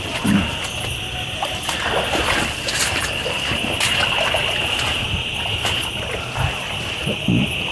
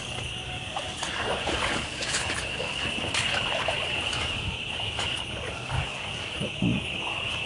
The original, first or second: first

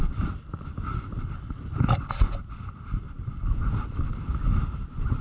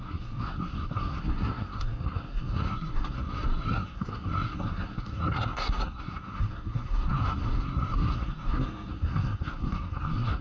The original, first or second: first